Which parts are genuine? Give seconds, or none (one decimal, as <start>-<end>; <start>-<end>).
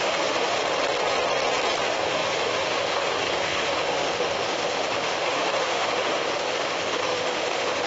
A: 0.6-1.8